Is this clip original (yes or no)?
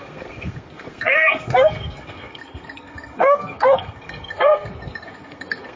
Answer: no